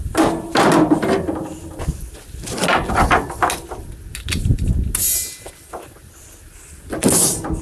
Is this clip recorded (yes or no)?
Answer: yes